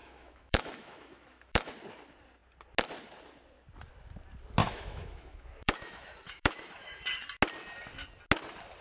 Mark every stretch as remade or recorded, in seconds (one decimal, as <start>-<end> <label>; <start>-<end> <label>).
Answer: 0.0-1.7 remade; 1.7-4.6 recorded; 4.6-7.0 remade; 7.0-8.8 recorded